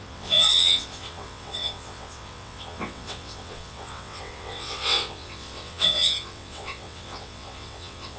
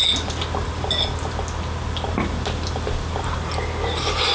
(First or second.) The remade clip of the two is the first